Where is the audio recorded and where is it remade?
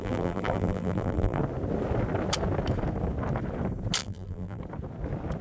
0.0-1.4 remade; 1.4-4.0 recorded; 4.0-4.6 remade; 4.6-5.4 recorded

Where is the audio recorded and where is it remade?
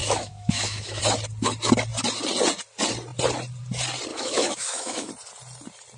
0.0-1.0 remade; 1.0-4.1 recorded; 4.1-5.1 remade; 5.1-6.0 recorded